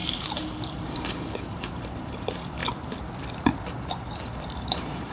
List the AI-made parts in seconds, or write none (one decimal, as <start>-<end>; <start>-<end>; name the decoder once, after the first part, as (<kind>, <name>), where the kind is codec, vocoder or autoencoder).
0.0-2.6 (vocoder, BigVGAN v2); 3.7-5.1